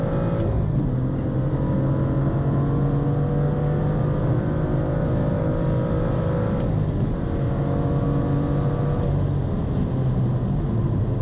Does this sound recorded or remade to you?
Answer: recorded